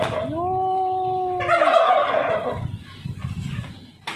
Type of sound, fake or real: real